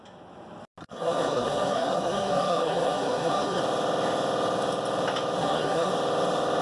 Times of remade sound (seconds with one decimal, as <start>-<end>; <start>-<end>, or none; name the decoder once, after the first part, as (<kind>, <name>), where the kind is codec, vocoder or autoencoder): 0.8-3.6 (codec, SNAC); 5.4-5.9